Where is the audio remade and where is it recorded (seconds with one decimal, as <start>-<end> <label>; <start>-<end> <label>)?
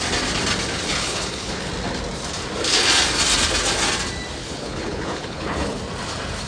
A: 0.0-0.9 recorded; 0.9-1.7 remade; 1.7-4.4 recorded; 4.4-5.8 remade; 5.8-6.5 recorded